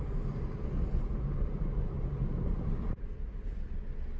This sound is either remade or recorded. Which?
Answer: recorded